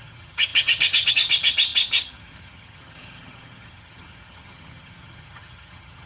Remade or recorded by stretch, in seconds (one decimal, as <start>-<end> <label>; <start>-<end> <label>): 0.0-6.1 remade